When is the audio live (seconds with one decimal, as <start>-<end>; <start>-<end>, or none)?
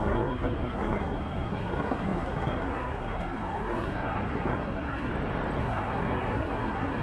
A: 5.1-5.6